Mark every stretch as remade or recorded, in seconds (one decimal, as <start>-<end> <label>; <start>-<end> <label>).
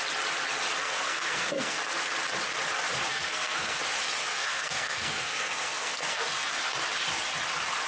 0.0-0.8 recorded; 0.8-1.8 remade; 1.8-3.1 recorded; 3.1-3.8 remade; 3.8-4.2 recorded; 4.2-6.2 remade; 6.2-7.9 recorded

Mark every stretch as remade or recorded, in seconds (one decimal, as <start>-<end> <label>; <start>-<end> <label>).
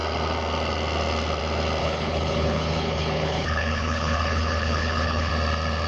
0.0-1.8 recorded; 1.8-5.3 remade; 5.3-5.9 recorded